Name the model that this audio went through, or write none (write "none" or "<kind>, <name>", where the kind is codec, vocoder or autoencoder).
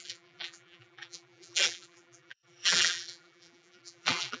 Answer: vocoder, BigVGAN v2